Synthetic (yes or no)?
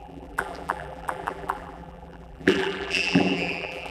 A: yes